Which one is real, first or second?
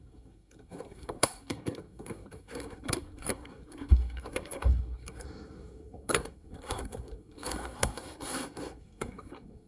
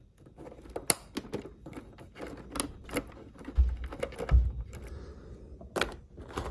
second